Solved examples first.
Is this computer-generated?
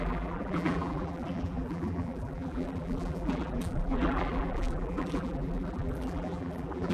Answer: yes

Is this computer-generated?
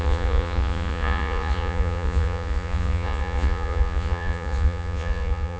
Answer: yes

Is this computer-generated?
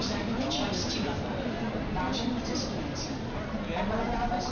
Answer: no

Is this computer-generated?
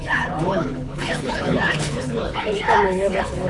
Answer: yes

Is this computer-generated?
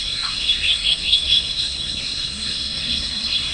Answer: yes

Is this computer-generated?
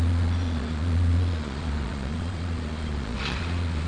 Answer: yes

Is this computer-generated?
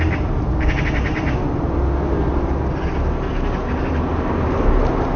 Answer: no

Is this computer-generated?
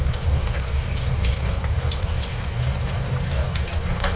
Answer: yes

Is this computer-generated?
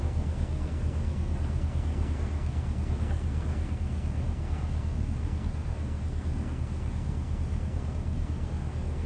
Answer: yes